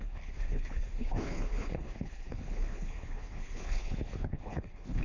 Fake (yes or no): yes